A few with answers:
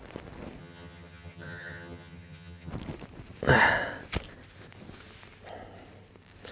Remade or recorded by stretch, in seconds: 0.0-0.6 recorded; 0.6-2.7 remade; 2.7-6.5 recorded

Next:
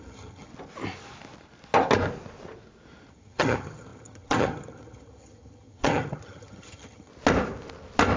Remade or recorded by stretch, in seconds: 0.0-0.5 remade; 0.5-3.1 recorded; 3.1-7.1 remade; 7.1-8.2 recorded